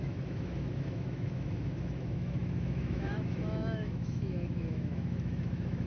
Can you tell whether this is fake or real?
fake